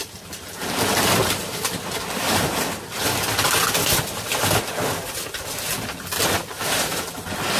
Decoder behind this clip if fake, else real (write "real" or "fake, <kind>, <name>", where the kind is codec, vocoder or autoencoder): real